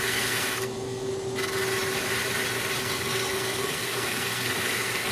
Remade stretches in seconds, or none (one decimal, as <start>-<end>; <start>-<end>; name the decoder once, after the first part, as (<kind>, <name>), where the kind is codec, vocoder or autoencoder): 0.0-1.1 (codec, SNAC); 2.8-5.1